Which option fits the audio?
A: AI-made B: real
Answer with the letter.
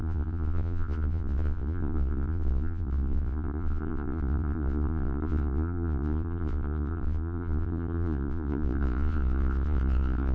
A